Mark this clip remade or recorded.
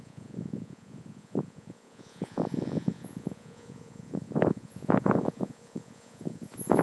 remade